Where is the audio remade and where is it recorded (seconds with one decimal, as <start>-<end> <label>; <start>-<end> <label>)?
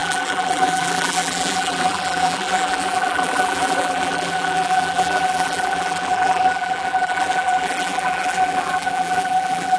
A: 0.0-9.8 remade